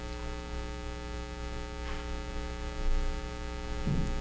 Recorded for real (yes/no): yes